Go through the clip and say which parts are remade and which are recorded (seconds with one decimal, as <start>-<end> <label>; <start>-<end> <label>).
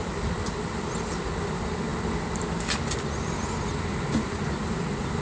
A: 0.0-5.2 recorded